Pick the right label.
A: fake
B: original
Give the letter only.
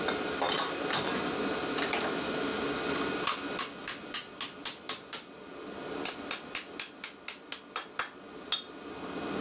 B